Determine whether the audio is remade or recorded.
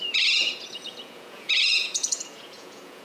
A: remade